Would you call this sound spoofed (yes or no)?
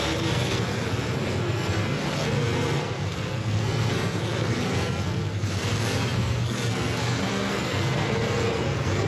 yes